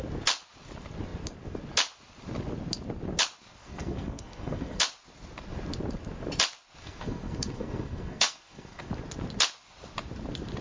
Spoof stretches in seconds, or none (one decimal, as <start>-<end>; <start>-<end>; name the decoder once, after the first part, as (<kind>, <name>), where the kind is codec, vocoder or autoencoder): 3.6-4.8 (codec, SNAC); 6.8-8.9